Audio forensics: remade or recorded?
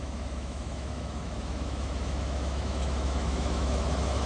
remade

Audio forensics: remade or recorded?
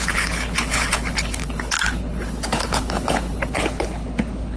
remade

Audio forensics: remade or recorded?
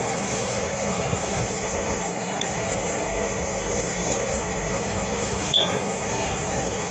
remade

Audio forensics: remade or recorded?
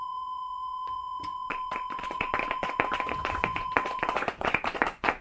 remade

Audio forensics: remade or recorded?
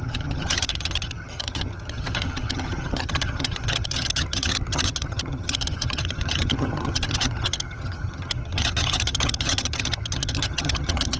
remade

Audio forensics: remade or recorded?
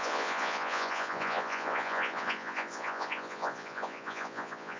remade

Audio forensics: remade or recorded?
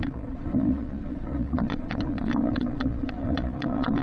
remade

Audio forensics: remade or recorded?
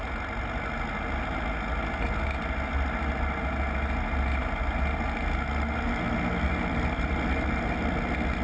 recorded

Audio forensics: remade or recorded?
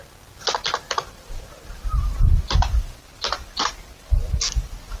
recorded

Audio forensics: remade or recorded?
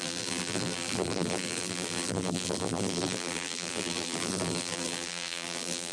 remade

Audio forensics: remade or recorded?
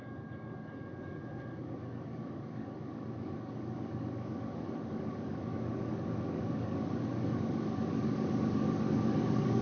remade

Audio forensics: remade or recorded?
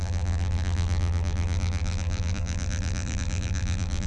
remade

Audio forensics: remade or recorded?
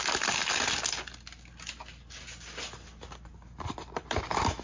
recorded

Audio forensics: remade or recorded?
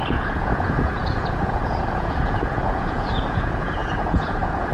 remade